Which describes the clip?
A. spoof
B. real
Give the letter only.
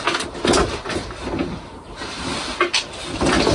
B